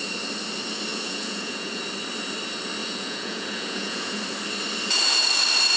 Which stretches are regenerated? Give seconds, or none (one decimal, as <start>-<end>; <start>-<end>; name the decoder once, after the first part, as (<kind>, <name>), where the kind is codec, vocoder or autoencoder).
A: 0.9-1.8 (vocoder, Vocos); 2.8-4.2